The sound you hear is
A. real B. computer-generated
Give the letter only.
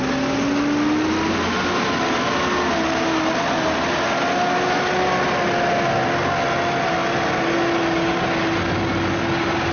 A